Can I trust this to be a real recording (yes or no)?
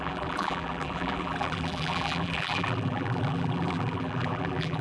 no